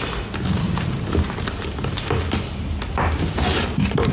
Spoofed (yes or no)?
no